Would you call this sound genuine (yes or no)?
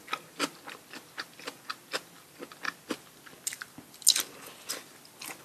yes